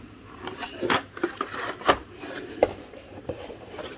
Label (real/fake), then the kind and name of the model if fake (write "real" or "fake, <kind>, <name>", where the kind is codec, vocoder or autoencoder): fake, vocoder, BigVGAN v2